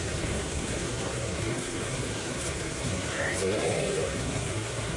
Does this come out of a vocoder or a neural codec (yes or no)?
yes